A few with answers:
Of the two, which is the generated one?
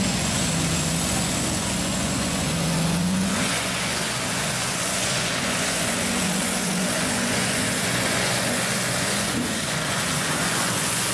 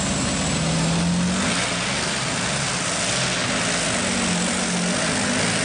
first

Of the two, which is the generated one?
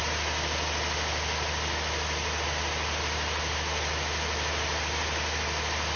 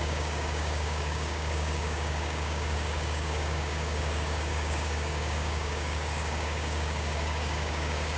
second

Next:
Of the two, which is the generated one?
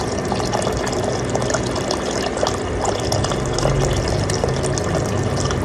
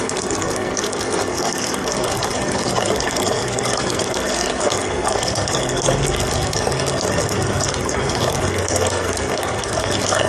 second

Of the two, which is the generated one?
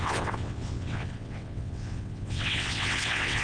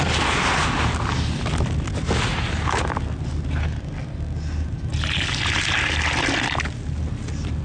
first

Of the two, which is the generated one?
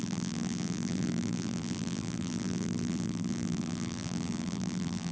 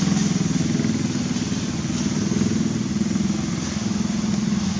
first